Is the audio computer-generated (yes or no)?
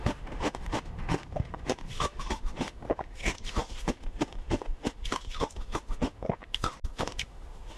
yes